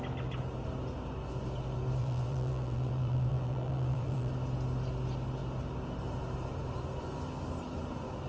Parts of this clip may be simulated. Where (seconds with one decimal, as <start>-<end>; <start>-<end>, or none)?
2.0-4.3